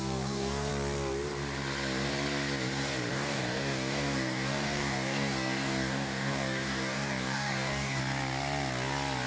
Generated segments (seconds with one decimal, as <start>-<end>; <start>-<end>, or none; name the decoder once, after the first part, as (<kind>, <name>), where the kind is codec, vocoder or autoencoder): 0.0-0.7 (codec, DAC); 3.1-8.0